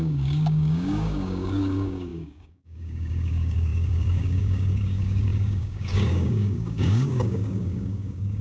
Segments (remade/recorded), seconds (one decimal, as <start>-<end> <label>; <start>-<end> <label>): 0.0-8.4 remade